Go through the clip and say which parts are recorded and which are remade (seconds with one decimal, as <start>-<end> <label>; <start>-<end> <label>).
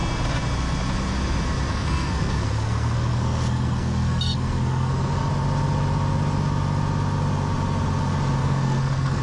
0.0-1.7 recorded; 1.7-5.3 remade; 5.3-8.4 recorded; 8.4-9.2 remade